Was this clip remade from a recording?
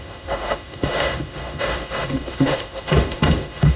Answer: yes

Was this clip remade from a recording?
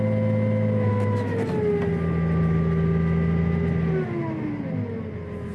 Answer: no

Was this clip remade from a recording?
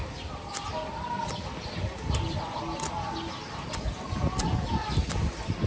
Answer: no